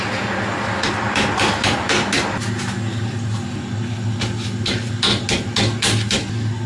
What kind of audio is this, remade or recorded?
recorded